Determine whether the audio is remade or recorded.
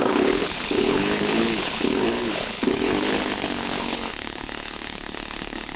remade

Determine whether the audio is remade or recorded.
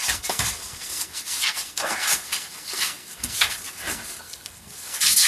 remade